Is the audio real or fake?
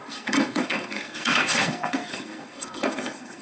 fake